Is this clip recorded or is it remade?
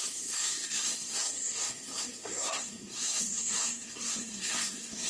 remade